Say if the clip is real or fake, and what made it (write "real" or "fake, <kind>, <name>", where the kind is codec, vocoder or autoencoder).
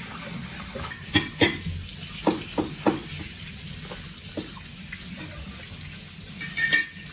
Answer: real